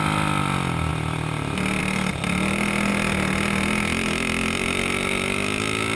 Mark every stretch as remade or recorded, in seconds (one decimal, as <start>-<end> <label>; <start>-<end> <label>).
0.0-6.0 recorded